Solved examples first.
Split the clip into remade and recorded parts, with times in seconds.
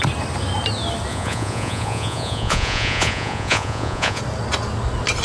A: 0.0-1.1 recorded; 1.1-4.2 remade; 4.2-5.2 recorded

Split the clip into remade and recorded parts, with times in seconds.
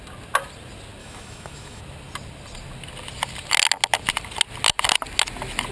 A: 0.0-1.0 recorded; 1.0-1.8 remade; 1.8-5.7 recorded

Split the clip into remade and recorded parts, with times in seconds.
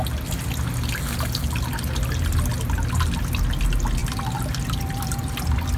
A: 0.0-4.0 recorded; 4.0-5.1 remade; 5.1-5.8 recorded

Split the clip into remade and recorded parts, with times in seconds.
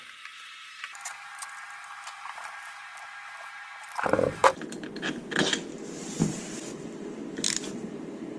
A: 0.0-1.3 remade; 1.3-2.0 recorded; 2.0-2.9 remade; 2.9-3.8 recorded; 3.8-7.2 remade; 7.2-7.9 recorded; 7.9-8.4 remade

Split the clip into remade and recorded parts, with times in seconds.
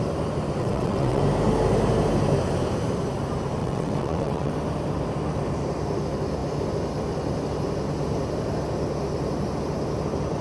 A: 0.0-0.6 recorded; 0.6-1.2 remade; 1.2-3.6 recorded; 3.6-4.5 remade; 4.5-10.4 recorded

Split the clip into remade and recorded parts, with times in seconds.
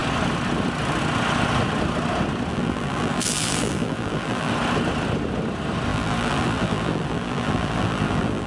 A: 0.0-2.5 recorded; 2.5-4.5 remade; 4.5-5.9 recorded; 5.9-8.5 remade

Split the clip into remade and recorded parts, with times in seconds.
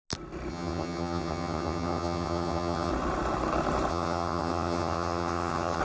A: 0.0-0.5 recorded; 0.5-2.9 remade; 2.9-3.9 recorded; 3.9-5.8 remade